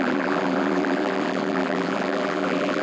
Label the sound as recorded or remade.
remade